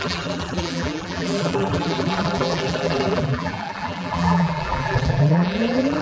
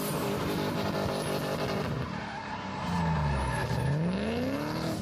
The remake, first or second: first